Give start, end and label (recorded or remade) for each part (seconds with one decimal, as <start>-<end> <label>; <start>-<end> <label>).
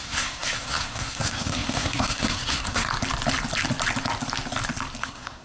0.0-2.9 remade; 2.9-5.0 recorded; 5.0-5.4 remade